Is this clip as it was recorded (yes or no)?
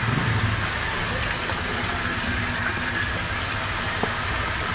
yes